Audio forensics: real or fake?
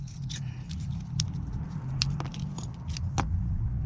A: real